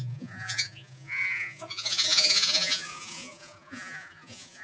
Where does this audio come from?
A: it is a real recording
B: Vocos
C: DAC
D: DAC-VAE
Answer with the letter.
B